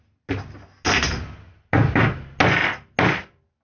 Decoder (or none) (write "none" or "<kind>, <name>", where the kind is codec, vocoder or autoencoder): none